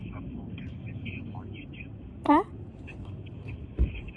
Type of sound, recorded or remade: remade